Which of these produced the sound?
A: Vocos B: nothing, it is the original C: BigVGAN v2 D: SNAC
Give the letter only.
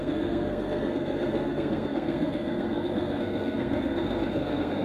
D